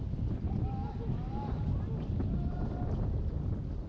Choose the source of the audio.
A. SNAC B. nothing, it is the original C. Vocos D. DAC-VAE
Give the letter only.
B